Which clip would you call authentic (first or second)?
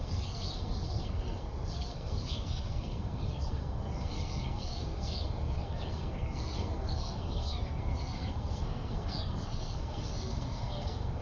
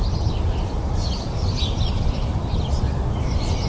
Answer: second